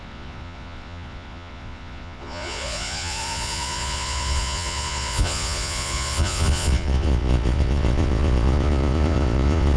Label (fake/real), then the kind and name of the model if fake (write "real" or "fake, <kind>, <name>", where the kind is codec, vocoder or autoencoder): fake, vocoder, Vocos